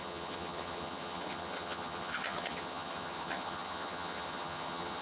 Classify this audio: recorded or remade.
remade